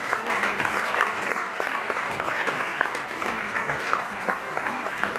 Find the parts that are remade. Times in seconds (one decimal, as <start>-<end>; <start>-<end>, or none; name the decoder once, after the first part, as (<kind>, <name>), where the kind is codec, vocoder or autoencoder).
0.0-5.2 (codec, DAC)

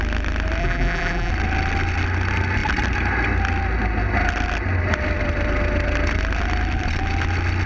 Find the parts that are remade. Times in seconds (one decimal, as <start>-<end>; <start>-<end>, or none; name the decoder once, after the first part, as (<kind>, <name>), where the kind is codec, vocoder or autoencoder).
0.6-1.3 (vocoder, BigVGAN v2)

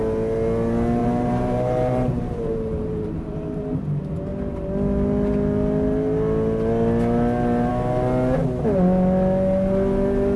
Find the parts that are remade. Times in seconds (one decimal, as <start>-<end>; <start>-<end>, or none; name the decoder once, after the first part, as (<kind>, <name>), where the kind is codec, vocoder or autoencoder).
1.0-3.8 (vocoder, BigVGAN v2)

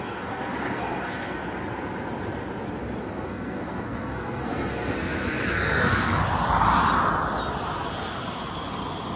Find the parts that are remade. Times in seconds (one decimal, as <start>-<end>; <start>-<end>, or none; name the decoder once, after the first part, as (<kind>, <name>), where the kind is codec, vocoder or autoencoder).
0.0-1.4 (codec, SNAC); 3.0-6.2

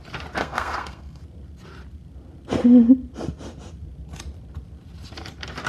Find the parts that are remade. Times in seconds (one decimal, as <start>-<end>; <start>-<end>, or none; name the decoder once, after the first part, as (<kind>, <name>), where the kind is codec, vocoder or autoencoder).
0.4-1.2 (codec, SNAC)

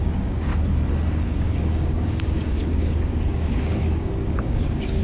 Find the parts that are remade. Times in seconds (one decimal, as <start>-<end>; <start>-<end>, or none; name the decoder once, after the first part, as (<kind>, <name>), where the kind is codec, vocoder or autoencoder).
0.0-0.5 (codec, DAC); 1.1-5.0